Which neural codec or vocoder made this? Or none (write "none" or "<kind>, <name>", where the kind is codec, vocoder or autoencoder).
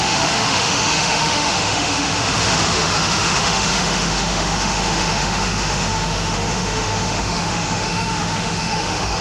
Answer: autoencoder, DAC-VAE